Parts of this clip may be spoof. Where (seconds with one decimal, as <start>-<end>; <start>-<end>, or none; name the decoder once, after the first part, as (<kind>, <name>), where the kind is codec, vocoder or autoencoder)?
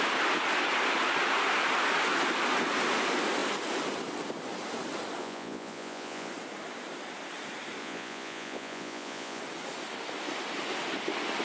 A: 5.2-6.3 (vocoder, Vocos); 7.8-9.4